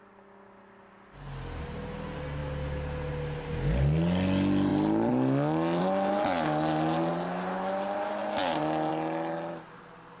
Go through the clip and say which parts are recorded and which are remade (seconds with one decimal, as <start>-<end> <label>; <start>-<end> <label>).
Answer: 0.0-10.2 recorded